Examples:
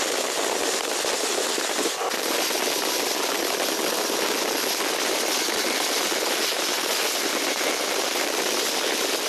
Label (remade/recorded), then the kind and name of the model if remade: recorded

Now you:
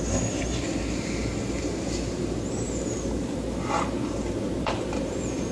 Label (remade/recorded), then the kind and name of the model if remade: remade, vocoder, BigVGAN v2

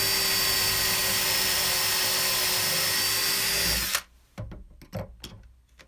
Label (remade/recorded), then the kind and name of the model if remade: recorded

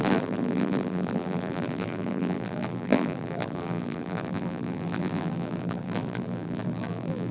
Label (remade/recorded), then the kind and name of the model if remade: remade, vocoder, BigVGAN v2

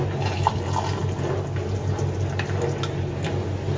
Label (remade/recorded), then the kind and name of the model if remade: recorded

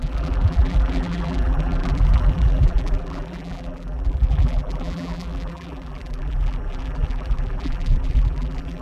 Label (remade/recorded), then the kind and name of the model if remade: remade, vocoder, BigVGAN v2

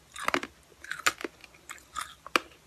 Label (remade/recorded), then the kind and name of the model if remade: recorded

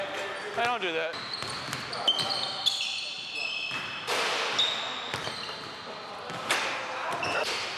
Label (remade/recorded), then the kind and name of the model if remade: recorded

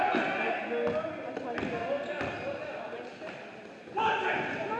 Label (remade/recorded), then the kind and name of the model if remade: recorded